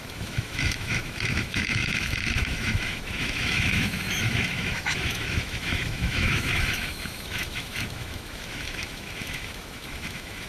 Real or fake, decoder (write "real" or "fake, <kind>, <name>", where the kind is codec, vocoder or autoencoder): fake, autoencoder, DAC-VAE